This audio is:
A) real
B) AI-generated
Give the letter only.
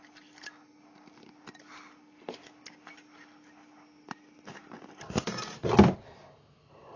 A